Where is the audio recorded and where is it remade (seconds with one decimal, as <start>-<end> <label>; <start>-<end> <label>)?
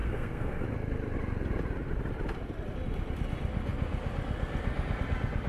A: 0.0-0.6 remade; 0.6-5.5 recorded